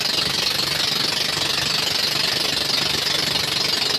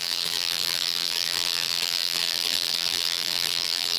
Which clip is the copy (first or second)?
second